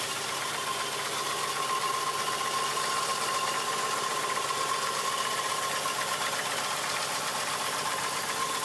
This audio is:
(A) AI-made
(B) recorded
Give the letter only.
B